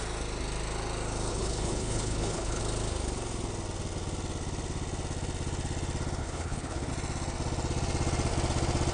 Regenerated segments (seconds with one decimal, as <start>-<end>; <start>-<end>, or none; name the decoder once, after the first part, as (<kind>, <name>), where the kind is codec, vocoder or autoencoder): 1.3-2.6 (codec, HILCodec); 6.2-6.9